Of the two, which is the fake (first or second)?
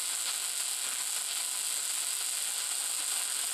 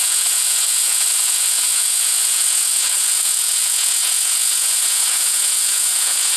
second